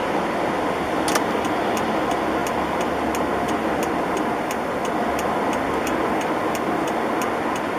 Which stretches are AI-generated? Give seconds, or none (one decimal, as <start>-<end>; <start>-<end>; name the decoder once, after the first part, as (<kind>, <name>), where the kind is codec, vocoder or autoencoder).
none